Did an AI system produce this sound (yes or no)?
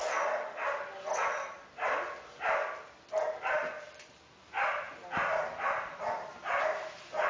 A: no